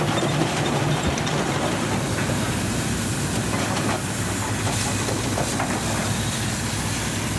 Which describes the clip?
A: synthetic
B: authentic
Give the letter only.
B